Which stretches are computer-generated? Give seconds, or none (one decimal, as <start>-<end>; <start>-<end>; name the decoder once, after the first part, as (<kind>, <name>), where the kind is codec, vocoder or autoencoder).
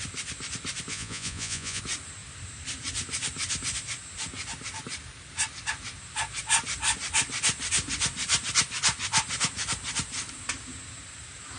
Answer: 0.9-1.8 (vocoder, Vocos)